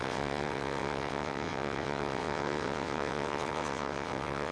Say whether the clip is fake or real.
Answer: fake